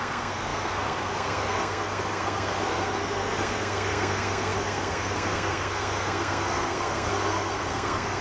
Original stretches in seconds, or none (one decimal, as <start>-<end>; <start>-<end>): none